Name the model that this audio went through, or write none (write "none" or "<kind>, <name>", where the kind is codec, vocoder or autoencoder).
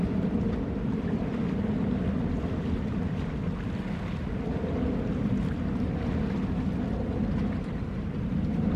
none